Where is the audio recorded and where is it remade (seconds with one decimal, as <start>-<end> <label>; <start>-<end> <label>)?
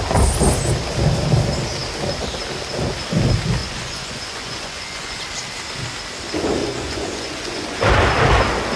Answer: 0.0-3.6 recorded; 3.6-5.2 remade; 5.2-6.6 recorded; 6.6-7.8 remade; 7.8-8.8 recorded